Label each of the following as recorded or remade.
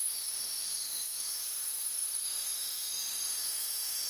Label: remade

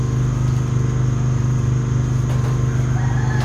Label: recorded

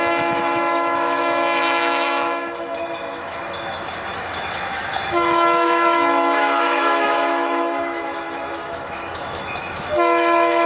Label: remade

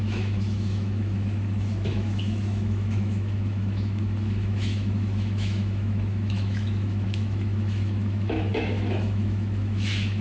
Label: remade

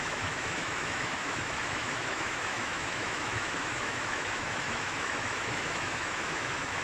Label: remade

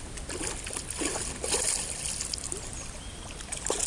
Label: recorded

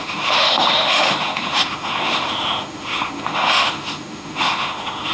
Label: remade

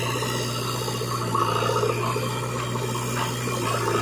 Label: recorded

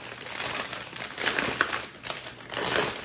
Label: recorded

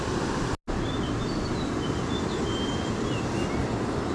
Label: recorded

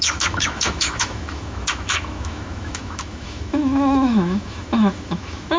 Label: remade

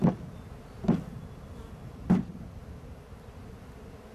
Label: recorded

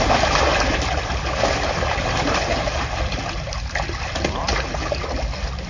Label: recorded